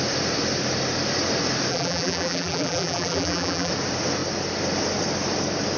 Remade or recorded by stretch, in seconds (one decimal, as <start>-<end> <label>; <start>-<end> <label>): 0.0-1.7 recorded; 1.7-3.7 remade; 3.7-5.8 recorded